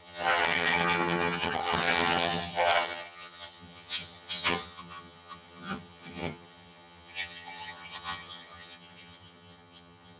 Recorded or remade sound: remade